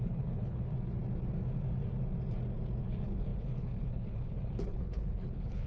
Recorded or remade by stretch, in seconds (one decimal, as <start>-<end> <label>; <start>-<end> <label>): 0.0-0.7 remade; 0.7-2.8 recorded; 2.8-5.7 remade